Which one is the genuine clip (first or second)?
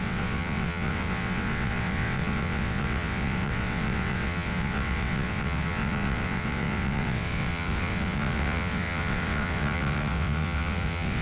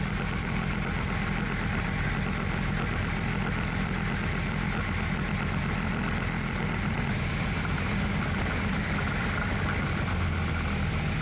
second